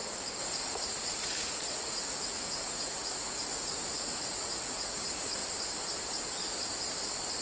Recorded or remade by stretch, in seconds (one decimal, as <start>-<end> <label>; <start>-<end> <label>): 0.0-0.9 recorded; 0.9-5.4 remade; 5.4-7.4 recorded